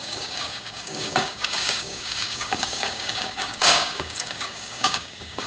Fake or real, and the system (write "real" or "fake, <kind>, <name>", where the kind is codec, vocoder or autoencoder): fake, codec, DAC